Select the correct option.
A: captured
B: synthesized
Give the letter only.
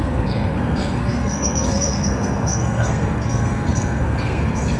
B